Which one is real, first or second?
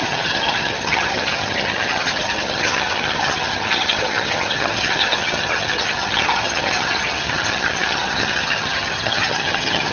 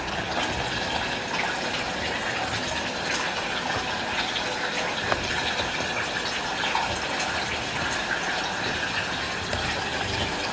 second